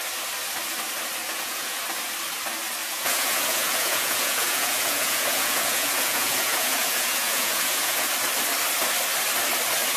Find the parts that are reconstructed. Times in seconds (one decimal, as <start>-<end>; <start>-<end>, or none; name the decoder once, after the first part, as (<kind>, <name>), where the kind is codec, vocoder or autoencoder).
1.2-1.8 (vocoder, Vocos); 2.8-8.1